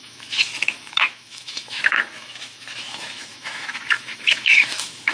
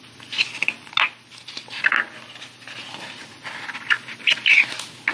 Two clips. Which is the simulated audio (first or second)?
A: first